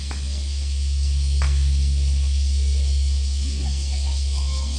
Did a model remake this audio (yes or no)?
yes